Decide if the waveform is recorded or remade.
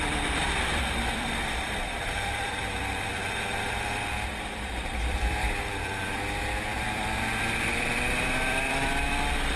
remade